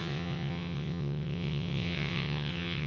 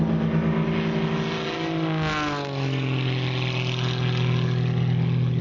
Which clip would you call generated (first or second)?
first